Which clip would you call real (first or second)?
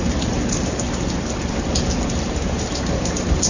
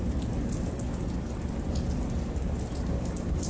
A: second